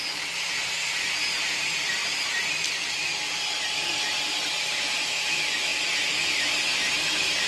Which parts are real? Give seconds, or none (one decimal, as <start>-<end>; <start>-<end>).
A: 0.0-7.5